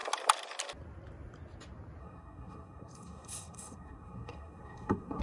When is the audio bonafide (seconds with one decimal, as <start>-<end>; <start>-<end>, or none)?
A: 0.0-2.0